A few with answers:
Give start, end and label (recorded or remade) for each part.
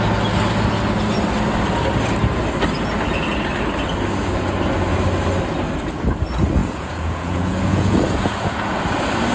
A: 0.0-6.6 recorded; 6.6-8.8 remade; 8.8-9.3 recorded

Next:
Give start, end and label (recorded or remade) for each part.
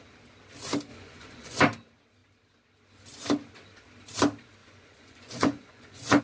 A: 0.0-0.9 recorded; 0.9-1.6 remade; 1.6-4.6 recorded; 4.6-6.2 remade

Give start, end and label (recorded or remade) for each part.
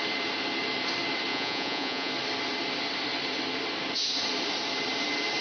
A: 0.0-1.3 recorded; 1.3-2.1 remade; 2.1-5.4 recorded